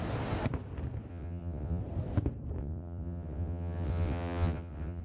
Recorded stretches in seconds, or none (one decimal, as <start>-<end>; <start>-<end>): 0.0-1.1; 1.8-2.6